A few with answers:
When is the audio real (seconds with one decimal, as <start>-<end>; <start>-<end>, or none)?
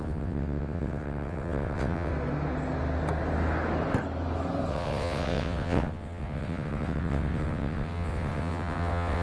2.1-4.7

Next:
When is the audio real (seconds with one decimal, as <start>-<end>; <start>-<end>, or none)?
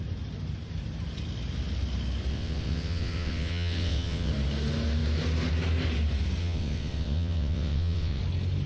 0.0-2.3; 4.3-6.4; 8.2-8.7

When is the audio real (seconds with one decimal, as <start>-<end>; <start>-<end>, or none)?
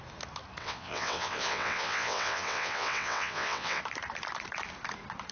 0.0-0.6; 3.8-5.3